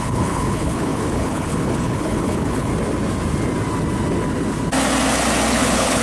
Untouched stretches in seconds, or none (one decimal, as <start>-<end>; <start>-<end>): 2.7-5.5